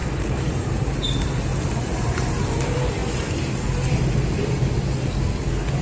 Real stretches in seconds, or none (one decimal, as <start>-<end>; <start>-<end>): 0.9-1.5; 2.6-5.8